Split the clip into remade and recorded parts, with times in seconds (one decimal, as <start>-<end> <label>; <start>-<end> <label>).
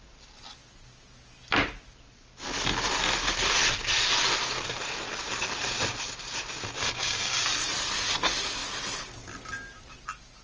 0.0-6.8 recorded; 6.8-7.4 remade; 7.4-10.4 recorded